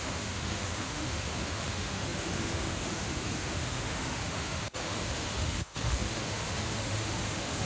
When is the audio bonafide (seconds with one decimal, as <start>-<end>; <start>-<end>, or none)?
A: none